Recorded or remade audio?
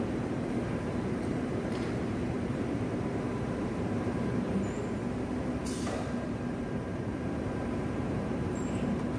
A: remade